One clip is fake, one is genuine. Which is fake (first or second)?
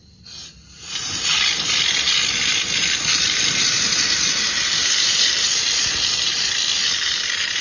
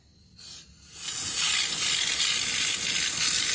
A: first